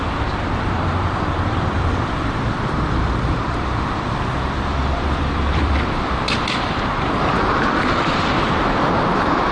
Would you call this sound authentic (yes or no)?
no